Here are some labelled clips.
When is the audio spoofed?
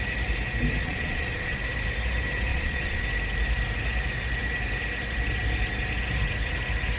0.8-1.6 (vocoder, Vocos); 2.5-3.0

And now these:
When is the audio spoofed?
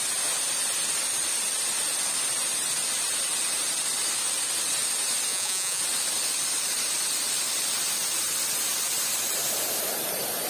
5.3-5.8 (vocoder, Vocos)